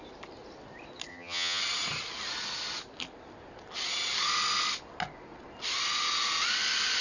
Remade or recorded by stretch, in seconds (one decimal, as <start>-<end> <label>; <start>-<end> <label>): 0.0-1.1 recorded; 1.1-1.6 remade; 1.6-7.0 recorded